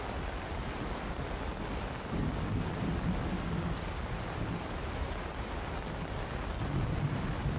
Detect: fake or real real